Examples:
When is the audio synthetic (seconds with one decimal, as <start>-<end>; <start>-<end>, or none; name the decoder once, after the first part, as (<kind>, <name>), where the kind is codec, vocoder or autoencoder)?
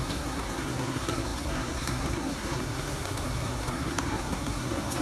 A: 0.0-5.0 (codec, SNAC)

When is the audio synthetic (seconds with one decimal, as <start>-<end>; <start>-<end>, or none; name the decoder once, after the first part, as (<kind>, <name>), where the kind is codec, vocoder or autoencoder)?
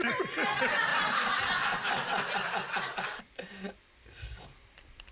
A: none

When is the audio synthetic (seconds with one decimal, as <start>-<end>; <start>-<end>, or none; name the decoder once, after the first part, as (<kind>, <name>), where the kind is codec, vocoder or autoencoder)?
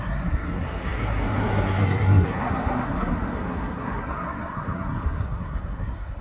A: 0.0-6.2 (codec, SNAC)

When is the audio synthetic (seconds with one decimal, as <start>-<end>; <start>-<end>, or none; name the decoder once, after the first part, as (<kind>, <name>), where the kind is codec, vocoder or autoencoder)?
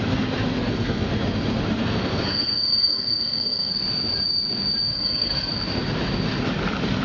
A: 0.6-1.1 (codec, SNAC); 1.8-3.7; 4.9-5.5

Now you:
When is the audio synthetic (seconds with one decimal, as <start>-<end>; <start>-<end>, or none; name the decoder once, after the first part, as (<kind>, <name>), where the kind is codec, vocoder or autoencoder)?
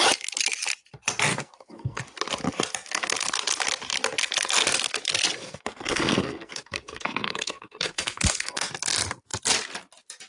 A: 1.3-2.0 (codec, SNAC); 5.4-8.7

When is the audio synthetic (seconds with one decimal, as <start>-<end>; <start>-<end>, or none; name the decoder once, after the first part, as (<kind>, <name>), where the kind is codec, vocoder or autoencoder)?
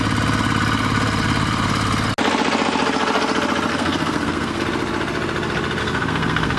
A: 3.7-4.6 (codec, SNAC); 5.8-6.6